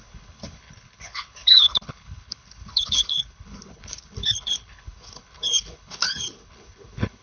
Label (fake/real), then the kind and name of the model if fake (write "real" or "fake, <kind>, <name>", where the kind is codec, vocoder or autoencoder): fake, codec, HILCodec